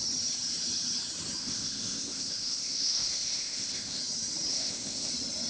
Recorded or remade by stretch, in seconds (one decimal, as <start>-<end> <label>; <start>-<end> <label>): 0.0-1.4 recorded; 1.4-4.0 remade; 4.0-4.5 recorded; 4.5-5.1 remade; 5.1-5.5 recorded